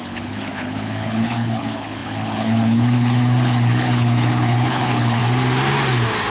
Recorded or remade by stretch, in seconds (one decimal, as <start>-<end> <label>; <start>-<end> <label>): 0.0-5.2 remade; 5.2-6.3 recorded